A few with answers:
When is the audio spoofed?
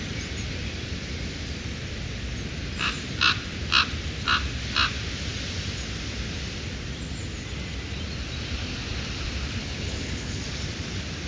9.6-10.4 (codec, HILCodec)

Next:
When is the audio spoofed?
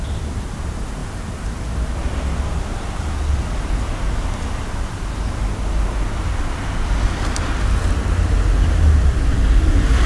none